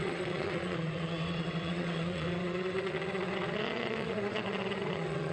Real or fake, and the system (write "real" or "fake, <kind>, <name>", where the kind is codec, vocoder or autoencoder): fake, vocoder, WaveNeXt